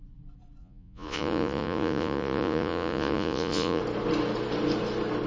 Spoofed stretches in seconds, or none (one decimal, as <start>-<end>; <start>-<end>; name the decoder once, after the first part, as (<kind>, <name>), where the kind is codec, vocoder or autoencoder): 0.6-3.8 (vocoder, Vocos)